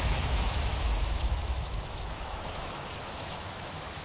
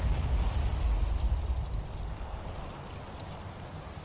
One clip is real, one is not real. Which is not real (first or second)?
first